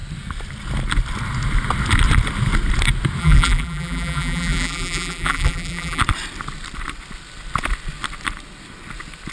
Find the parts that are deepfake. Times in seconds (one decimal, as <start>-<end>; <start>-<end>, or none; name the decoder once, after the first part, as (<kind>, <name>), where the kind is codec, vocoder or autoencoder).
3.2-6.0 (vocoder, BigVGAN v2)